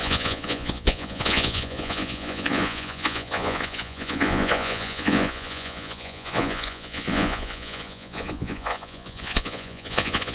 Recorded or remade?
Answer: remade